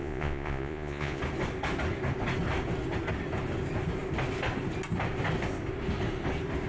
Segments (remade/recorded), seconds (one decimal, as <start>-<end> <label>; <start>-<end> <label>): 0.0-1.2 remade; 1.2-6.7 recorded